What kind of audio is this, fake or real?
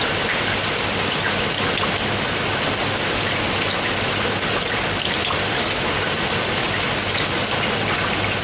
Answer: real